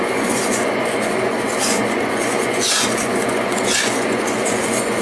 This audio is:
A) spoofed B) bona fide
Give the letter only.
A